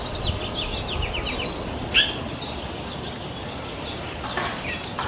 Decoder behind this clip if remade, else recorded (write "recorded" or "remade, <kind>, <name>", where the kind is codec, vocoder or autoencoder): recorded